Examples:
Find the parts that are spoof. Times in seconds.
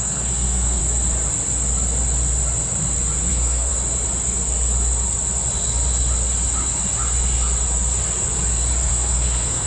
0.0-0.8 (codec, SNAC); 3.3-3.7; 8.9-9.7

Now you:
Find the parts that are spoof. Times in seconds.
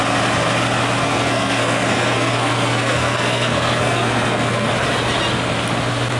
1.0-4.7 (codec, SNAC)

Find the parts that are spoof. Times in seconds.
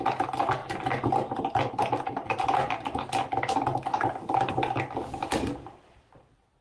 none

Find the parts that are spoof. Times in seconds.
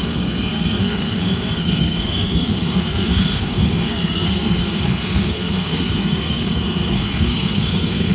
0.0-8.1 (codec, SNAC)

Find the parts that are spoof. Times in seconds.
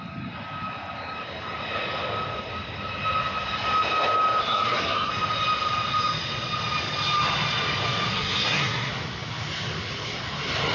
4.4-5.1 (codec, SNAC); 8.1-8.9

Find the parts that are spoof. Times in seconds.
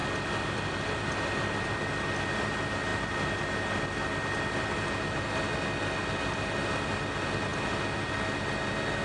none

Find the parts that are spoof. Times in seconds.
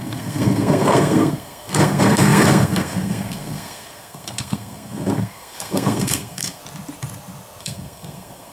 0.0-6.6 (codec, SNAC); 7.6-8.5